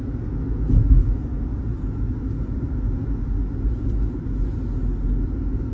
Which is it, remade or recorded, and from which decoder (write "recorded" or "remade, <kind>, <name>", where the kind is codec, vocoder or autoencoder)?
recorded